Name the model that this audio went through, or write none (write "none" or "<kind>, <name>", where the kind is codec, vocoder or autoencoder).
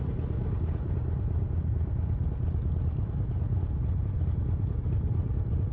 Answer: vocoder, BigVGAN v2